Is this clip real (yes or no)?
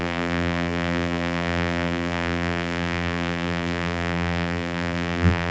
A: no